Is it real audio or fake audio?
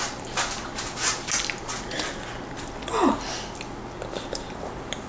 real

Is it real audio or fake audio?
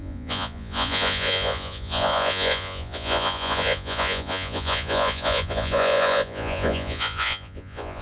fake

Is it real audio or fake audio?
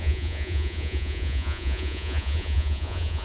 fake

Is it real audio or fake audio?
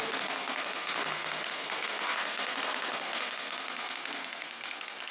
fake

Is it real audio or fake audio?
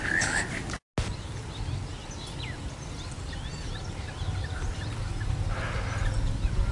real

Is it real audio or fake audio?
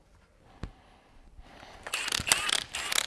real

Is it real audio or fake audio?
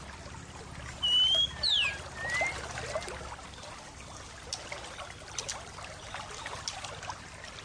real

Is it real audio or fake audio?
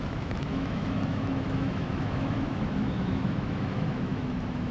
fake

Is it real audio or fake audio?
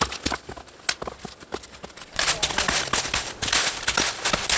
real